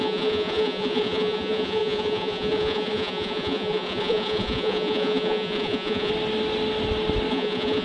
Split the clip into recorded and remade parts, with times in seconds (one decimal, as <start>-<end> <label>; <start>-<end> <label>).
0.0-6.1 remade; 6.1-7.3 recorded; 7.3-7.8 remade

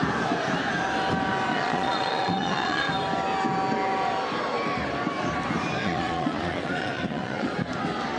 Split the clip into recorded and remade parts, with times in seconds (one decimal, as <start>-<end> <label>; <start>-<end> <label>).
0.0-1.5 recorded; 1.5-2.9 remade; 2.9-5.8 recorded; 5.8-7.5 remade; 7.5-8.2 recorded

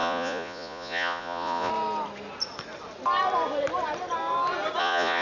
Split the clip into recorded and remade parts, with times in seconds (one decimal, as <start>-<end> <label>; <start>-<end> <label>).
0.0-1.7 remade; 1.7-4.8 recorded; 4.8-5.2 remade